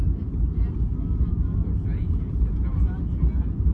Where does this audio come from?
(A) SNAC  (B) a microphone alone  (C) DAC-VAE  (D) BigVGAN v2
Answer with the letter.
B